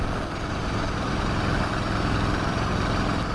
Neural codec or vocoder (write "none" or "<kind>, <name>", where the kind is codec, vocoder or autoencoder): none